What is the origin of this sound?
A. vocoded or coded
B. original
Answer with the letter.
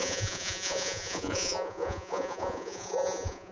A